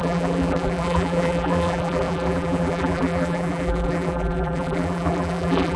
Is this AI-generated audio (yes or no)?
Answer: yes